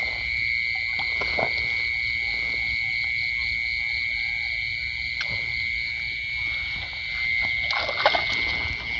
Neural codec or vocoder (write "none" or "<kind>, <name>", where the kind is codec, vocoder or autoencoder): none